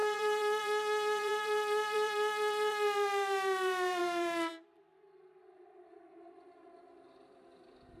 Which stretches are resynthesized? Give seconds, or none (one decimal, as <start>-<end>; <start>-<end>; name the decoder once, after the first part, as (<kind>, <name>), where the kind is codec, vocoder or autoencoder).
0.0-8.0 (vocoder, BigVGAN v2)